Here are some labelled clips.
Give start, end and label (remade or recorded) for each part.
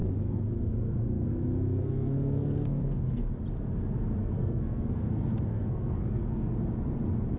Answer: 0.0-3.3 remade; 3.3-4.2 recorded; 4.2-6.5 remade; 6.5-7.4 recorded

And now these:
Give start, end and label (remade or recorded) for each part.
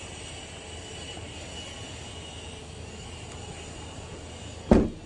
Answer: 0.0-2.6 recorded; 2.6-3.1 remade; 3.1-5.1 recorded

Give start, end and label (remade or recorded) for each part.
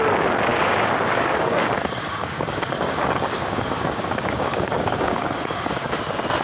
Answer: 0.0-0.5 recorded; 0.5-1.7 remade; 1.7-2.2 recorded; 2.2-6.0 remade; 6.0-6.4 recorded